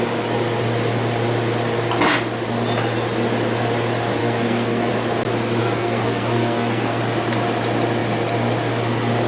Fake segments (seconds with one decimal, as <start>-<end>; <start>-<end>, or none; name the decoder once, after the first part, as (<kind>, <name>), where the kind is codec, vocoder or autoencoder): 4.2-4.9 (codec, SNAC); 5.6-7.0